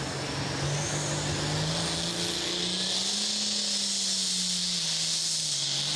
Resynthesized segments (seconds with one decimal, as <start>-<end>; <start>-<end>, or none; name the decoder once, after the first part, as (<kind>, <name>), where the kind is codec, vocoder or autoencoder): none